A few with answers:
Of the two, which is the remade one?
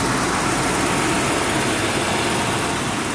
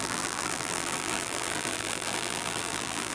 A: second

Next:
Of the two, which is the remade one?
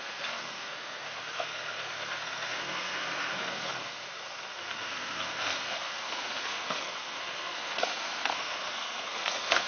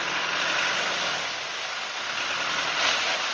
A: first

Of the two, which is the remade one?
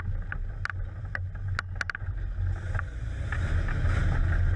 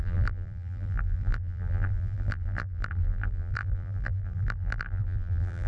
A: second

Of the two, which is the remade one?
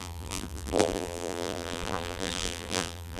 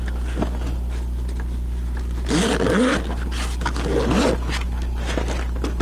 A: first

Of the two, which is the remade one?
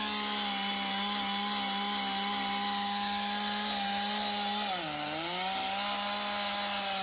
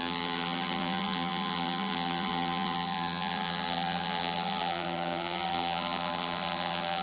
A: second